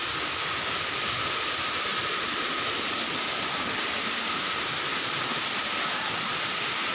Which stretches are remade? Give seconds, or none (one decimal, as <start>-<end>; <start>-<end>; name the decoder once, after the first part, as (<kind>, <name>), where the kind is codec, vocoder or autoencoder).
none